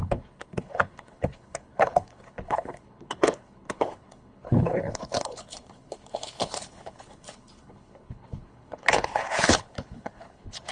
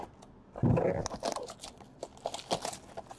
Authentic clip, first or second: second